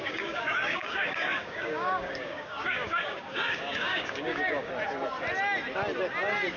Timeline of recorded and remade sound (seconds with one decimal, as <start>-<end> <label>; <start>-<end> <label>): 0.0-4.7 remade; 4.7-6.6 recorded